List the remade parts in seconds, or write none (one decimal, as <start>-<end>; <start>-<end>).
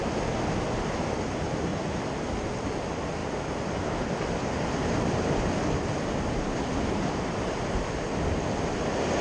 1.7-2.6; 3.2-8.4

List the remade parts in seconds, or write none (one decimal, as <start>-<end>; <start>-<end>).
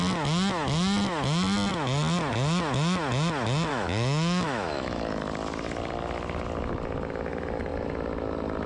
3.7-5.0